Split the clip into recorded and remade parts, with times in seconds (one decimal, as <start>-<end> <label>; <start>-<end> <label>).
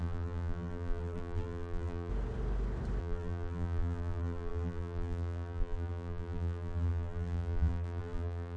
0.0-2.1 remade; 2.1-3.0 recorded; 3.0-8.6 remade